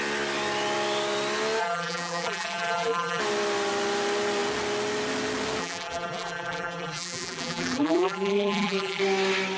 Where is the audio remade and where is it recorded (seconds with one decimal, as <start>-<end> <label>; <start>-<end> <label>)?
0.0-1.6 recorded; 1.6-3.2 remade; 3.2-5.6 recorded; 5.6-9.0 remade; 9.0-9.6 recorded